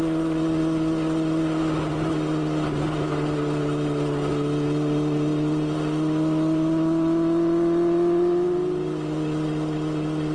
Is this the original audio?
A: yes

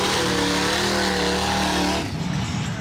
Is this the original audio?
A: yes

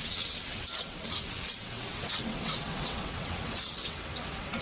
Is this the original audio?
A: no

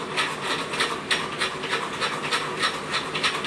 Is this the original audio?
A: yes